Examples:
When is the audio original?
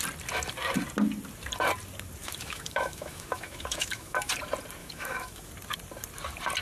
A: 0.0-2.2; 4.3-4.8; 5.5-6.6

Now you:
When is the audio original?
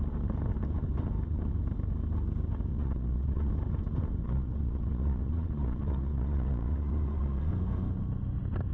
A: 0.0-2.7; 3.5-4.2; 7.5-8.7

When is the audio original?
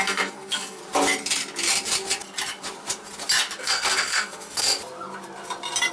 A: 0.8-3.6; 4.7-5.9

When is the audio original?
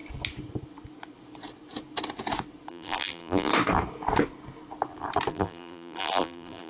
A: 0.0-2.7; 3.5-5.3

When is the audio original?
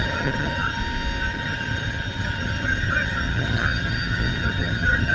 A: 0.8-1.3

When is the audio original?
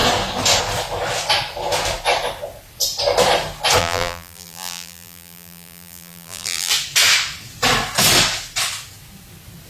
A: 0.0-3.8; 6.7-9.7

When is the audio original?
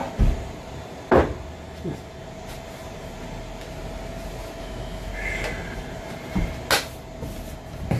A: 0.0-4.6; 5.1-8.0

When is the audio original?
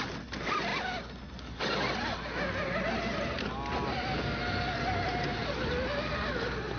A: 0.0-6.8